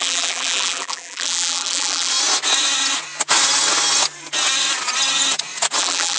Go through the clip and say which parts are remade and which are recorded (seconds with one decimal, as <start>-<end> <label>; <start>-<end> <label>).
0.0-2.1 remade; 2.1-5.8 recorded; 5.8-6.2 remade